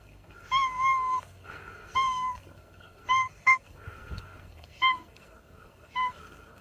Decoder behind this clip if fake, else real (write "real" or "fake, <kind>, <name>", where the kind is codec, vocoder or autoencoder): fake, codec, SNAC